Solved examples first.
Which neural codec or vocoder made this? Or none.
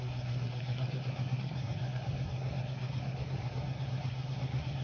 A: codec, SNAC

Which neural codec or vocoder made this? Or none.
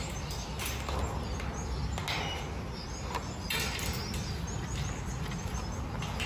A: none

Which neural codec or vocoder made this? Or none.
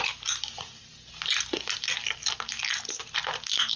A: none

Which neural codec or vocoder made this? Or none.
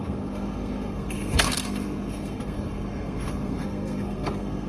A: codec, SNAC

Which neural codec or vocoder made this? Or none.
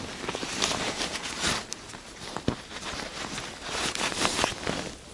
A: none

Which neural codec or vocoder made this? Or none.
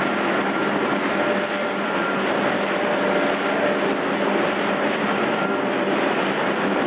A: none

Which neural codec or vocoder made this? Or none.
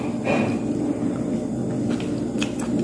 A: none